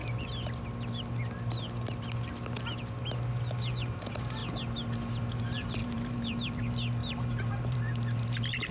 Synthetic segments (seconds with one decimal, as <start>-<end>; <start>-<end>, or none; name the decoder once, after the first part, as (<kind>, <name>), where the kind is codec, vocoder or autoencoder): 3.7-4.4 (vocoder, BigVGAN v2); 5.3-8.7